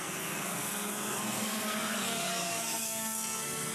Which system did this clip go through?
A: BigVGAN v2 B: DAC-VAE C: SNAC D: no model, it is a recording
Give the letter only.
C